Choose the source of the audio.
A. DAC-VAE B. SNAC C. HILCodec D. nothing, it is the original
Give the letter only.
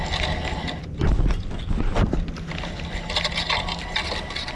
D